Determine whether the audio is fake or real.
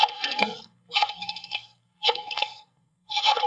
fake